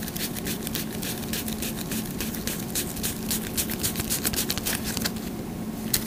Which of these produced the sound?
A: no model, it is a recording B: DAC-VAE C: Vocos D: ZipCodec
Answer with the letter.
A